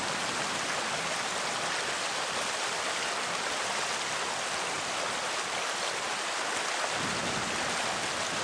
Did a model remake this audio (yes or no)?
no